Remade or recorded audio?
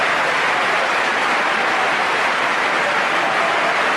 recorded